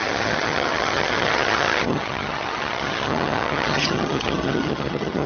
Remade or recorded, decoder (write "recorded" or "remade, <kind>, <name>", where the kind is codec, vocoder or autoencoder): remade, vocoder, HiFi-GAN